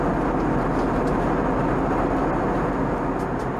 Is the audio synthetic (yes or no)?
no